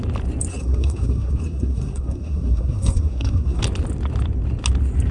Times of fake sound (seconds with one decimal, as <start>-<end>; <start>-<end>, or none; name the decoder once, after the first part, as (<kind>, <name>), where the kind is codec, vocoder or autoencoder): 0.5-3.6 (codec, SNAC)